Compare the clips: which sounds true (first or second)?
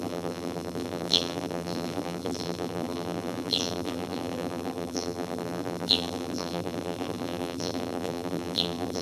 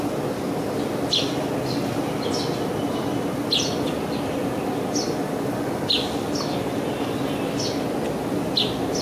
second